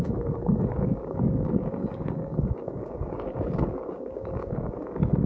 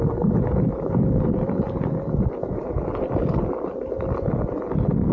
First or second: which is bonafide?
second